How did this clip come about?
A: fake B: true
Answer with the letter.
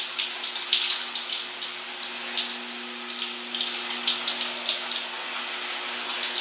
B